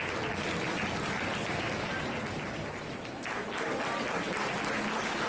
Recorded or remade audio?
recorded